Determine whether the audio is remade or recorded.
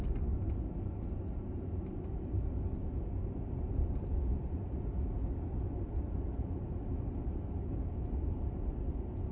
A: recorded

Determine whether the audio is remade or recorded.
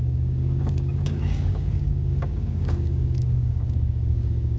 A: remade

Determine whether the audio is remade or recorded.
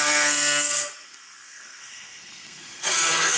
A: remade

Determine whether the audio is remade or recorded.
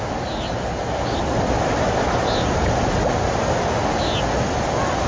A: recorded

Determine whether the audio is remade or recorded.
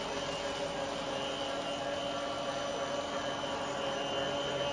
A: recorded